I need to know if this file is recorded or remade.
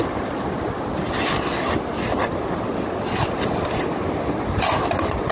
recorded